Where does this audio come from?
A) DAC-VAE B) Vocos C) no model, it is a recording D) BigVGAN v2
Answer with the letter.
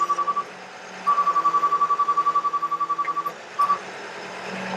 C